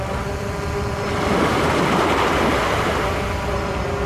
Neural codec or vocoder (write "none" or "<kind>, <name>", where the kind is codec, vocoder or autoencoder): none